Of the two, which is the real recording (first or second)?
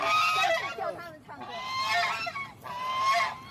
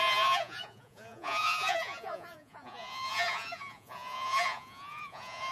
first